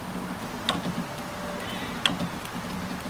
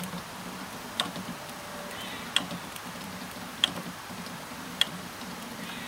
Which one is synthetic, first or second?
second